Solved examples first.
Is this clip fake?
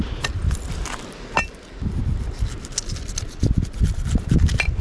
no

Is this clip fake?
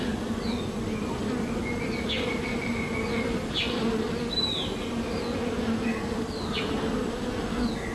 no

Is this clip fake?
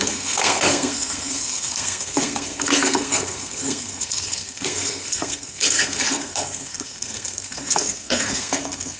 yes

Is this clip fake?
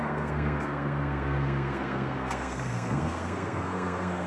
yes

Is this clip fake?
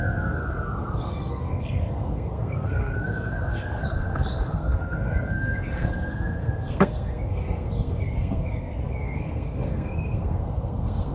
yes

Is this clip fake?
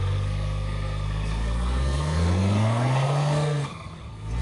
yes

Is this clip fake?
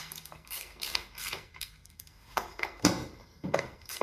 yes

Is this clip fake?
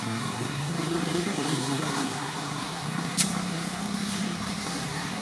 yes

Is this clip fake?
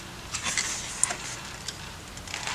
no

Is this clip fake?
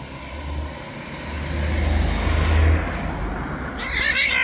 no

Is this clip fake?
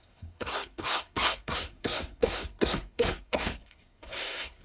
yes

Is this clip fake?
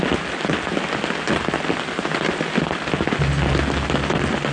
no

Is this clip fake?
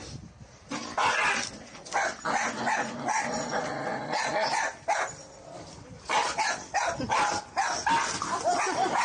no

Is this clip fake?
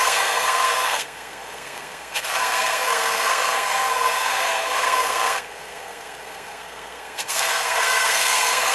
yes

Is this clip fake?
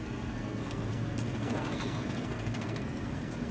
yes